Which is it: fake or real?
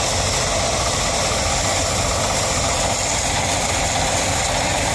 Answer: real